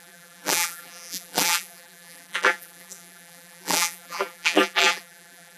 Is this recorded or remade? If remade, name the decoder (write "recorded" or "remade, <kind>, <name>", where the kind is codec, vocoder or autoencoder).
remade, vocoder, BigVGAN v2